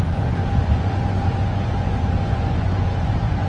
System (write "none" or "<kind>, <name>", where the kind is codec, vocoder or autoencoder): vocoder, Vocos